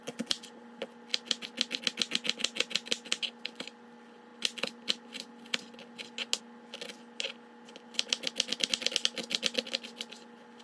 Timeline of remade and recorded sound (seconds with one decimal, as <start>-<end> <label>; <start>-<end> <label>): 0.0-10.6 recorded